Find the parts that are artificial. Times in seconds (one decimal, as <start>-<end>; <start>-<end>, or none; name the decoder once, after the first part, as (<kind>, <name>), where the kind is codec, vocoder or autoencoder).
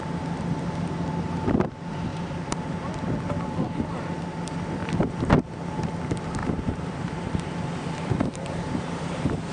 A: 2.1-2.9 (vocoder, BigVGAN v2); 4.8-5.9; 6.4-9.5